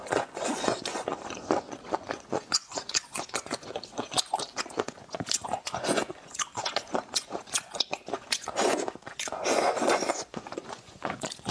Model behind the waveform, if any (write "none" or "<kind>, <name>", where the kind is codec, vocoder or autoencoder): vocoder, Vocos